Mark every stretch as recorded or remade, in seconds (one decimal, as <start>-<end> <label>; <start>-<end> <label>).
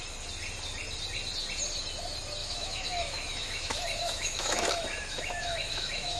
0.0-2.4 recorded; 2.4-6.2 remade